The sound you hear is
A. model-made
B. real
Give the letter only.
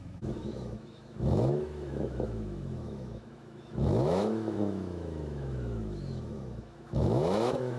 A